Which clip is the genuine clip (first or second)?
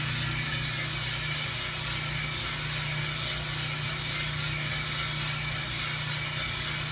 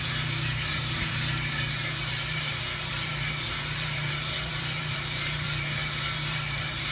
first